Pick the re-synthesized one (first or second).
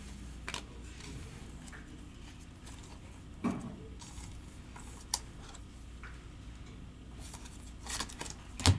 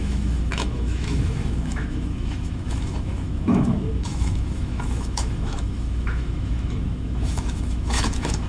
second